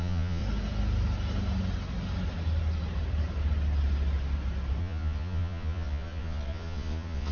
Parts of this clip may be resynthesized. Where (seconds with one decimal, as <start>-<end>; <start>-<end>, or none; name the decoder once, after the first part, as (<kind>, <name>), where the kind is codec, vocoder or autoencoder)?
0.0-0.4 (vocoder, Vocos); 4.8-7.3